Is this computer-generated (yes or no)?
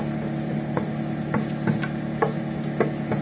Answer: no